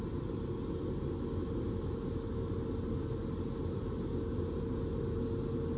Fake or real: real